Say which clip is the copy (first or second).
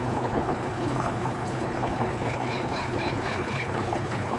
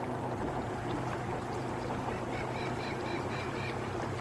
first